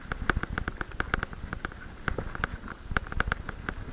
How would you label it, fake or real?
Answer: real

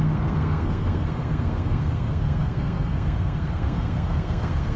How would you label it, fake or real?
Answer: fake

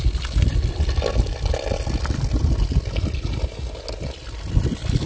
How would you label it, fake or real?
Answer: real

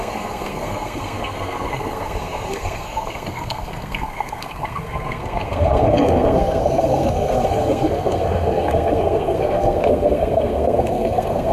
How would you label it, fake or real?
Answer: fake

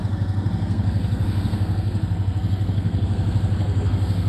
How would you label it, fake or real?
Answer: fake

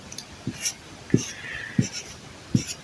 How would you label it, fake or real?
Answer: real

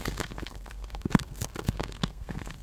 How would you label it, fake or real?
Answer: fake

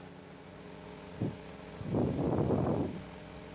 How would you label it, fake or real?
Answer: real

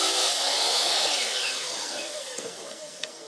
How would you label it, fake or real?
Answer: fake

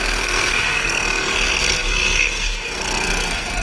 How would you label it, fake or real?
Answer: fake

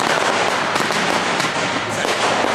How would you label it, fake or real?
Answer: real